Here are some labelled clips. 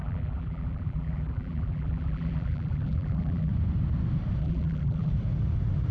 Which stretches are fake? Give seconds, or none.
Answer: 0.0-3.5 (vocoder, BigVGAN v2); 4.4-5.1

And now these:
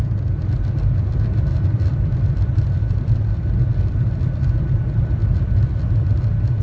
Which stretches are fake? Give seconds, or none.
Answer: 0.0-5.2 (vocoder, BigVGAN v2)

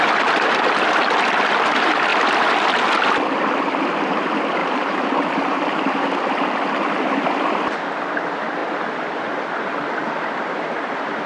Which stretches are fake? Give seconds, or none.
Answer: 4.6-5.6 (vocoder, BigVGAN v2)